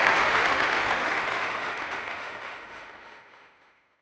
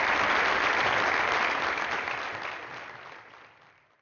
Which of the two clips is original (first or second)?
second